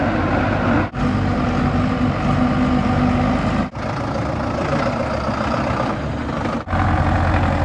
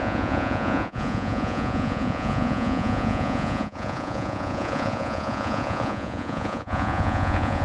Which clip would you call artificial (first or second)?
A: second